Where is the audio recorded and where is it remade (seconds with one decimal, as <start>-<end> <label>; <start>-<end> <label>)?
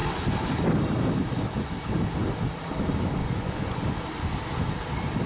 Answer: 0.0-3.2 recorded; 3.2-3.8 remade; 3.8-5.3 recorded